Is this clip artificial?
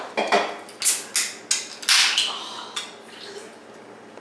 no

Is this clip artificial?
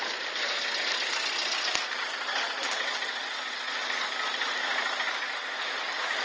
no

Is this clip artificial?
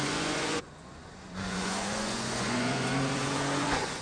yes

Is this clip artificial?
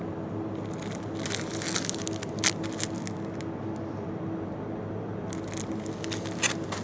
no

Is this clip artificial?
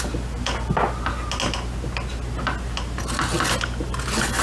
no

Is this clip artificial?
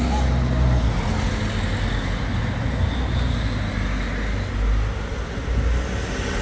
no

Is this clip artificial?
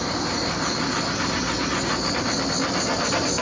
no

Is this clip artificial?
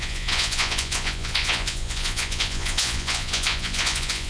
yes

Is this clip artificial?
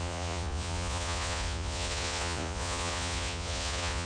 yes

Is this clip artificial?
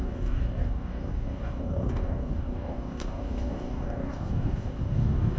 yes